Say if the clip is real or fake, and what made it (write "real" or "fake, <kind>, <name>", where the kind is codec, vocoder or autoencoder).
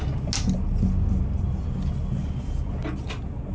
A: real